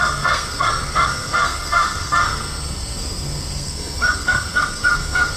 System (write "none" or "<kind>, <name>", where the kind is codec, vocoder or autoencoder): codec, SNAC